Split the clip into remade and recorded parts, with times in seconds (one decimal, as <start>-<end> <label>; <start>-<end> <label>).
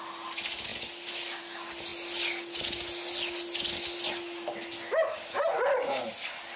0.0-6.6 recorded